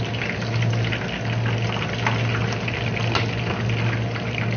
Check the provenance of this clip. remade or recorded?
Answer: recorded